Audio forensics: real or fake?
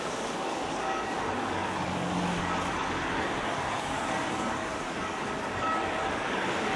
fake